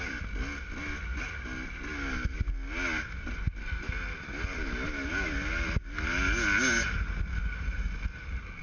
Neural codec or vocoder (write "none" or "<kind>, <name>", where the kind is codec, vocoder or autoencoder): none